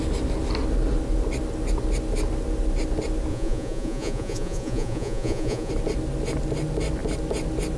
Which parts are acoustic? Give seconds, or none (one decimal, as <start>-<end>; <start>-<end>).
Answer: 0.0-3.3; 5.7-7.8